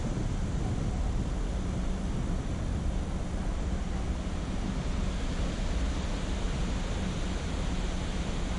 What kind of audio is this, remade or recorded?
recorded